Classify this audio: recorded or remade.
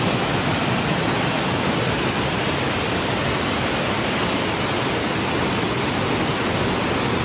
recorded